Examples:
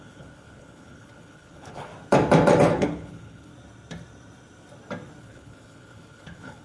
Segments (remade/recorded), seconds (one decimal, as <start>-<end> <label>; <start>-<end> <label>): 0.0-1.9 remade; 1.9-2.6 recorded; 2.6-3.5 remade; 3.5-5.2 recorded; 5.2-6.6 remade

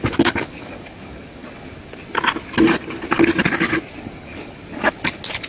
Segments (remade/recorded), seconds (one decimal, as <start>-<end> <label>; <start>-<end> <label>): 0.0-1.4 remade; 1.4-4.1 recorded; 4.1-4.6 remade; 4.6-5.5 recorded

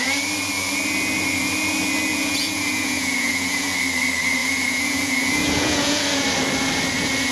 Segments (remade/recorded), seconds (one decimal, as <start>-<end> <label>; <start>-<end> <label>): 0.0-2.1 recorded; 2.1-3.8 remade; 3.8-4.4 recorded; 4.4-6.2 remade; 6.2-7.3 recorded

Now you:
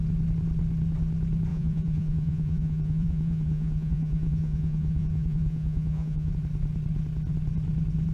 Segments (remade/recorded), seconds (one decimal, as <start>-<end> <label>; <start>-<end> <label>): 0.0-1.5 recorded; 1.5-6.3 remade; 6.3-8.1 recorded

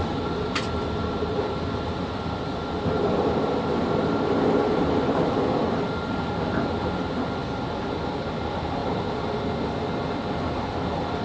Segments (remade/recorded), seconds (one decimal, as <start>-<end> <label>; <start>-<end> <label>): 0.0-11.2 recorded

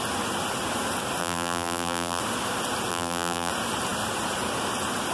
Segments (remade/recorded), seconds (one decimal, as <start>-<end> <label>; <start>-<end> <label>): 0.0-1.2 recorded; 1.2-2.2 remade; 2.2-2.9 recorded; 2.9-3.5 remade; 3.5-5.1 recorded